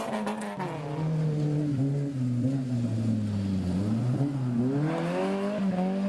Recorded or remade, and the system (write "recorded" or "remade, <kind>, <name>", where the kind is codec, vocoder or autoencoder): recorded